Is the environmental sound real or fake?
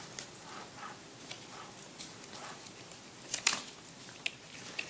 real